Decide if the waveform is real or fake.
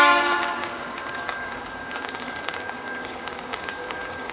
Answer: fake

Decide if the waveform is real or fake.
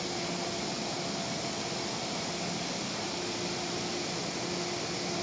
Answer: real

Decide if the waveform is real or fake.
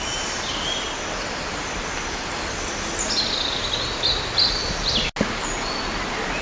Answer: real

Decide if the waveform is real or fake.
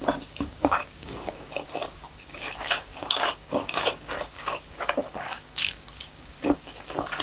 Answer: fake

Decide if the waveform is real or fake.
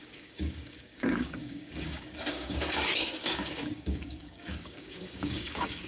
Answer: fake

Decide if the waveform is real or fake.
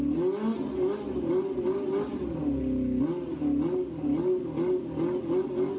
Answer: real